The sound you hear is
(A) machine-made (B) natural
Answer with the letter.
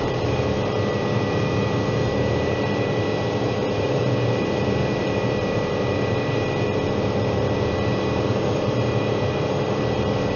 A